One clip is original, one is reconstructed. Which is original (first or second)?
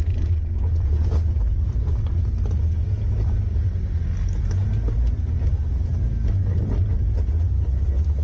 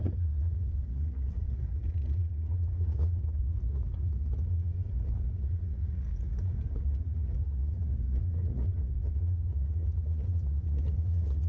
first